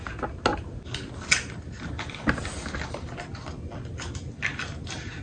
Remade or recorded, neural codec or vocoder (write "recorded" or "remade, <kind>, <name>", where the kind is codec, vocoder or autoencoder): recorded